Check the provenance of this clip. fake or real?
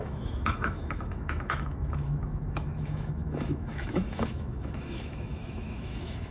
fake